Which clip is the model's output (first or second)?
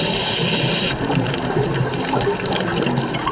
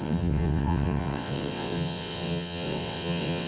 second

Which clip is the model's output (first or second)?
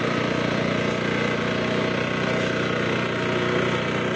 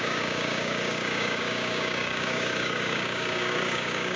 second